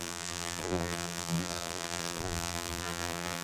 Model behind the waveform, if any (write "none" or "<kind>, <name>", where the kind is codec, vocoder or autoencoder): vocoder, BigVGAN v2